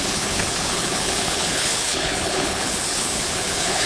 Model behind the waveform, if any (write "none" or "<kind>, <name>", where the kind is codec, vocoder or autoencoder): codec, HILCodec